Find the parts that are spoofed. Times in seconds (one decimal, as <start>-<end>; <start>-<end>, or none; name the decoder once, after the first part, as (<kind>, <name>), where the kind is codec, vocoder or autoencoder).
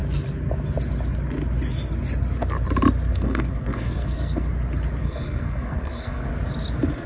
3.1-4.5 (codec, SNAC); 5.0-6.3